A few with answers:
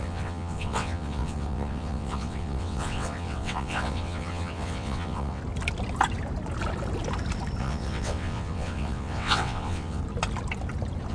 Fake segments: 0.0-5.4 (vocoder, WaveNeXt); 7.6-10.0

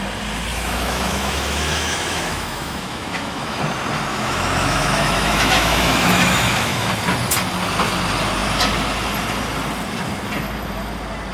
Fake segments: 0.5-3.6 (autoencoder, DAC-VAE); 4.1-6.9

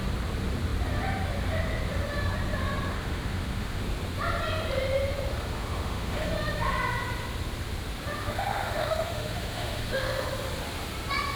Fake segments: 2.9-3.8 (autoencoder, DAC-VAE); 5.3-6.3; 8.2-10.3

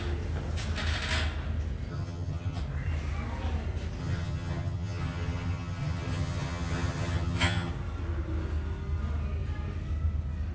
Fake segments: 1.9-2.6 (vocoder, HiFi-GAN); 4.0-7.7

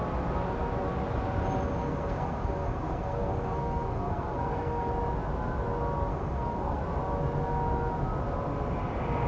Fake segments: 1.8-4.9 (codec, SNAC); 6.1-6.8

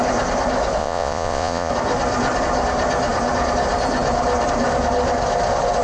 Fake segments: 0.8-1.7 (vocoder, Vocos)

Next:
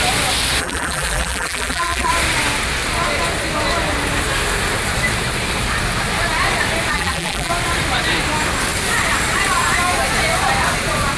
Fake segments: 0.6-2.1 (vocoder, BigVGAN v2); 6.9-7.5